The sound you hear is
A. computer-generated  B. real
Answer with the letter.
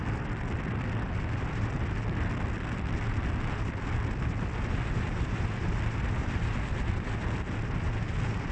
B